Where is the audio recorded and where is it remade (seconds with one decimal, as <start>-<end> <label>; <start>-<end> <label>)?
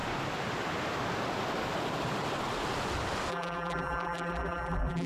0.0-3.3 recorded; 3.3-5.1 remade